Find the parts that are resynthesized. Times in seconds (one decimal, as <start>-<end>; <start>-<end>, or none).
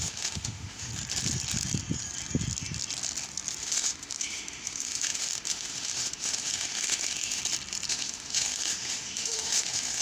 0.0-0.9; 3.6-7.4; 7.9-10.0